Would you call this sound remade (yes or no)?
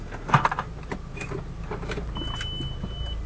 no